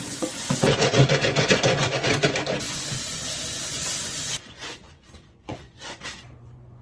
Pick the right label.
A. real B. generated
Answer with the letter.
B